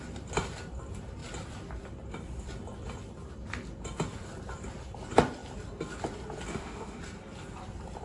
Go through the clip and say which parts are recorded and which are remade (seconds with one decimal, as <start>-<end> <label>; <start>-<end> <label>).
0.0-6.5 recorded; 6.5-7.0 remade; 7.0-8.0 recorded